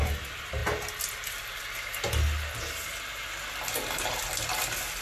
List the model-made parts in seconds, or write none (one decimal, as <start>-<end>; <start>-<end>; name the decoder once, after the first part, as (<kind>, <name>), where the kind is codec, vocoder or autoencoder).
none